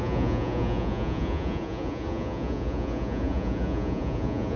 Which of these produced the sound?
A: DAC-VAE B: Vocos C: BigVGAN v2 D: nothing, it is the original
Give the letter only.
B